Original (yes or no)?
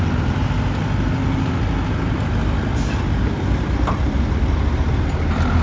yes